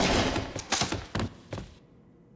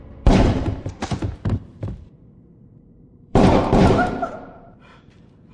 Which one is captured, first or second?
first